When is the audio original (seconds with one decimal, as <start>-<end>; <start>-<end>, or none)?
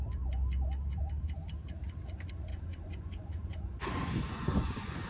0.0-2.5